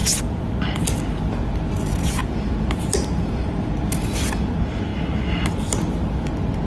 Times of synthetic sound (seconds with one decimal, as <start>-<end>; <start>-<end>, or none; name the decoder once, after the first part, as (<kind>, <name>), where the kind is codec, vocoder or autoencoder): 0.0-0.5 (vocoder, Vocos)